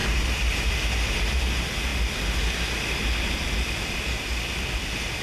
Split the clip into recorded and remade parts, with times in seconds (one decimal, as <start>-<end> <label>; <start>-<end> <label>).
0.0-0.7 remade; 0.7-5.2 recorded